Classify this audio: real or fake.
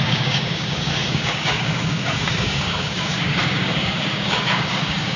fake